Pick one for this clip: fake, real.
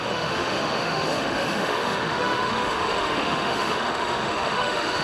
fake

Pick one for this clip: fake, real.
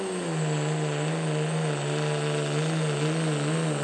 real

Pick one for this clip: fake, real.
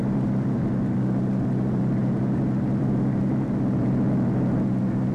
real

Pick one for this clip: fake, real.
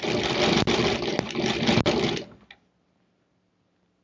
real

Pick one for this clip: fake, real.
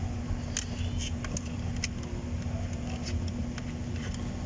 real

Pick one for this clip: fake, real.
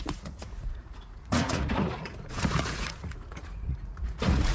fake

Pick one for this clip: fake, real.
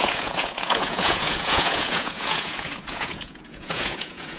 fake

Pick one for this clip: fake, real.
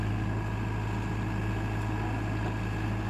real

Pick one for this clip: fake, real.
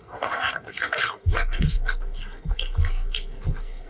fake